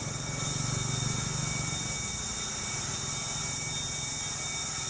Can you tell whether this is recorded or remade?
recorded